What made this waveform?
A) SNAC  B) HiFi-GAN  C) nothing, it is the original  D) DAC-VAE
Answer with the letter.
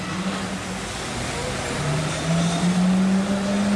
C